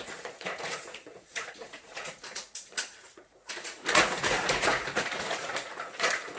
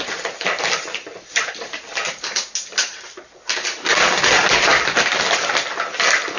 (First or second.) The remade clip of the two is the first